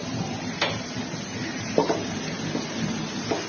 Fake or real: real